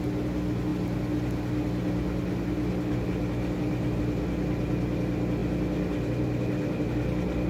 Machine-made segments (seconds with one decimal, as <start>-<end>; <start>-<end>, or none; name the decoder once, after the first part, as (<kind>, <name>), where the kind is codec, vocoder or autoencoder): none